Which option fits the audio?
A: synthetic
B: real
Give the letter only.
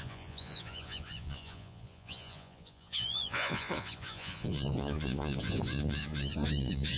A